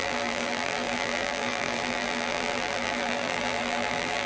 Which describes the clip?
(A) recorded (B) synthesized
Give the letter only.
B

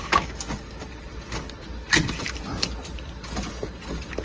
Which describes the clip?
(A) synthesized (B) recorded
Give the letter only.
B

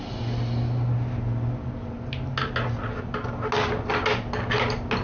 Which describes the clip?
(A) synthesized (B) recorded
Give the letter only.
B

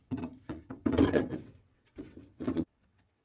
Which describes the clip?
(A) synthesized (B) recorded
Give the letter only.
A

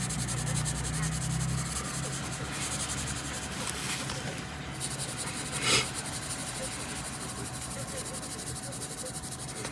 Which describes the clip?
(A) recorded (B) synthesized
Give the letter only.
A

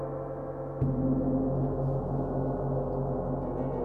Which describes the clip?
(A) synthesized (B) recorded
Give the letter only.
B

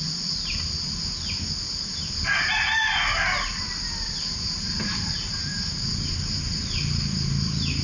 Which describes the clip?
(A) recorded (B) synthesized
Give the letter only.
A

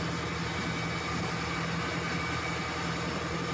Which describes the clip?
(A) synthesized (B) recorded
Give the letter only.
B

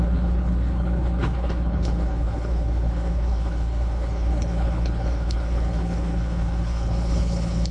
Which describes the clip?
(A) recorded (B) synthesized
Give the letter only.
B